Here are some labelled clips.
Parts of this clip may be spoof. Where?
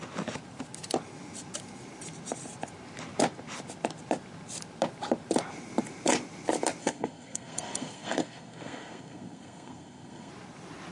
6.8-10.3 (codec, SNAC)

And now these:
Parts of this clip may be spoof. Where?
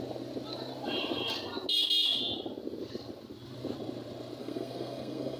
4.4-5.4 (codec, SNAC)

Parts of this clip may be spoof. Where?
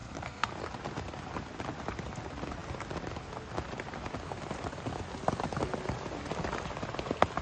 0.0-0.5 (codec, SNAC)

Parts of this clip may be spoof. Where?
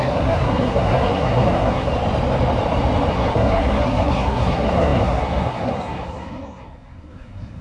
0.0-1.9 (codec, SNAC); 3.1-7.6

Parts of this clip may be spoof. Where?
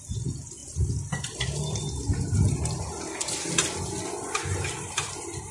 none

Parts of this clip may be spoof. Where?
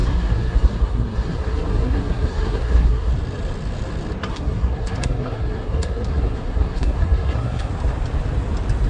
0.0-3.1 (codec, SNAC); 4.3-7.7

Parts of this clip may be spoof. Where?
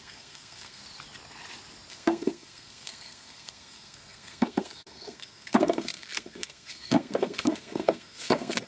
0.0-0.8 (codec, SNAC); 1.9-8.7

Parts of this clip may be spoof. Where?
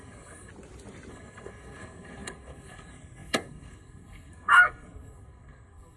0.0-0.5 (codec, SNAC); 1.1-6.0